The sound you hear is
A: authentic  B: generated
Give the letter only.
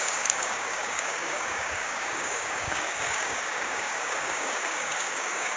B